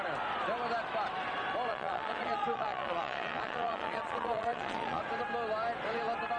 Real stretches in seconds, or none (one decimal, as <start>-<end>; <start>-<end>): 0.0-1.7; 5.0-6.4